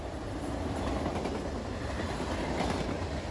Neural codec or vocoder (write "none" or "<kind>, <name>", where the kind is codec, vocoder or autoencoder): none